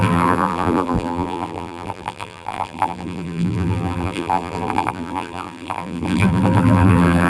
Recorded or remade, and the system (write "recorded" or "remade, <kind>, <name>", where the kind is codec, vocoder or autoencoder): remade, vocoder, BigVGAN v2